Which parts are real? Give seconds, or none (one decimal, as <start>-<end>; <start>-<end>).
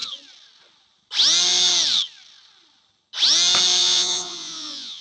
0.0-3.8